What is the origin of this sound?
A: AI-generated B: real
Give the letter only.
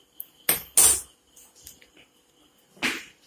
B